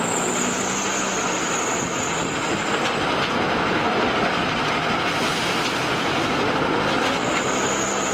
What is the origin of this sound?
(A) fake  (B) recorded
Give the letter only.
B